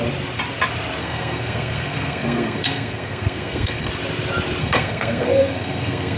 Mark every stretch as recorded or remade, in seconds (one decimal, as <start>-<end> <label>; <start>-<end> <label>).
0.0-1.0 recorded; 1.0-3.9 remade; 3.9-4.6 recorded; 4.6-6.2 remade